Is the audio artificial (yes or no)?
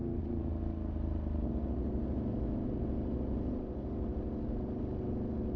no